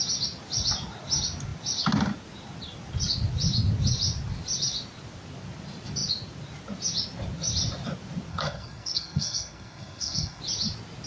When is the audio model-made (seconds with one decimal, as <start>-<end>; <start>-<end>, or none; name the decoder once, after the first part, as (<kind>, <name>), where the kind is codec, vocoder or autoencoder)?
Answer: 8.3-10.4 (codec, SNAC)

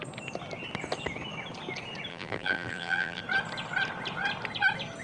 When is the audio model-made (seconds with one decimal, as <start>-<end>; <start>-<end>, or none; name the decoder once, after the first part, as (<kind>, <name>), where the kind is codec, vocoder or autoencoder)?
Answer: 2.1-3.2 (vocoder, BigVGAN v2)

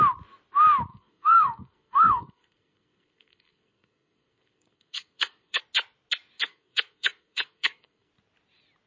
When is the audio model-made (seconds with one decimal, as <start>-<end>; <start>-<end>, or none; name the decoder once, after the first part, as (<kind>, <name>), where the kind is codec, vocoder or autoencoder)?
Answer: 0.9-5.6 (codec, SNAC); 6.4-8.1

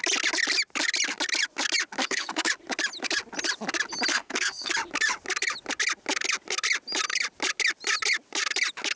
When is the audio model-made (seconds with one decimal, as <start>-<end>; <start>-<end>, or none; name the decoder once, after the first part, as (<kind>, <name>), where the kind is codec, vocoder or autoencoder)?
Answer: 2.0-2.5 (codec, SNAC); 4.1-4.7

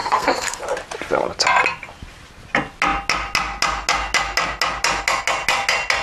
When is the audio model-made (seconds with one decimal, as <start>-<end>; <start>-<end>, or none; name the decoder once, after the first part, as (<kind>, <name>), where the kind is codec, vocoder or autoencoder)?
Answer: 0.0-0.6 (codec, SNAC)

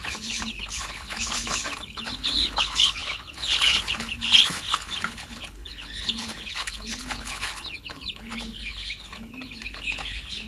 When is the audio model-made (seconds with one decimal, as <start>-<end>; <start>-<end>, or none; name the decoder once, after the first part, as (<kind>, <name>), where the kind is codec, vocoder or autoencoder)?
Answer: 0.0-10.5 (codec, HILCodec)

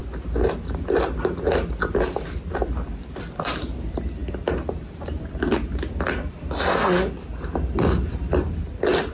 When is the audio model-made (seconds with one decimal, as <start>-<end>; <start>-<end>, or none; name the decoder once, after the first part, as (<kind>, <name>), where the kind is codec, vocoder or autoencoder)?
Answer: none

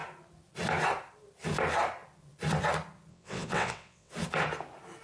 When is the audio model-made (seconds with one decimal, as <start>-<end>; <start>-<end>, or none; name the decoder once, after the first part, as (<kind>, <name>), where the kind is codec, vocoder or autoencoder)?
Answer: 3.1-4.1 (vocoder, WaveNeXt)